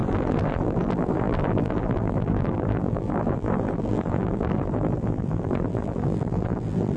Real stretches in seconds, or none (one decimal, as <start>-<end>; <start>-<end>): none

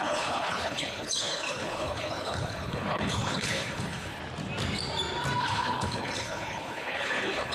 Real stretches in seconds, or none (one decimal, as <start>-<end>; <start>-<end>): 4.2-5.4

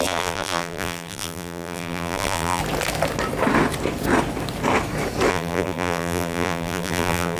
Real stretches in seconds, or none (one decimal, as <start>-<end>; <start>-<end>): 2.6-5.3

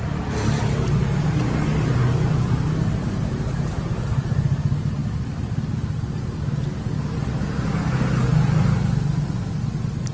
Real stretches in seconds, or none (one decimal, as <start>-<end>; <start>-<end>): 0.0-10.1